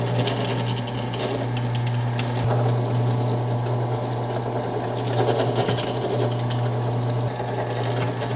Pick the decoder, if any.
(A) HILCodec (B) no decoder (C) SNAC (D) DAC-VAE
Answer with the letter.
B